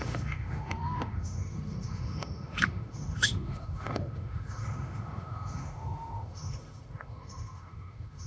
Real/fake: fake